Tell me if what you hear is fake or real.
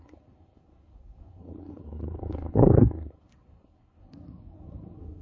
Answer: fake